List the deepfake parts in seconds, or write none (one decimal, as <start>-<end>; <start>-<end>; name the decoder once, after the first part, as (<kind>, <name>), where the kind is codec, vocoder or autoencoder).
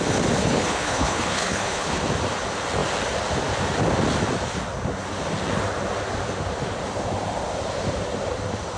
0.4-2.0 (codec, HILCodec)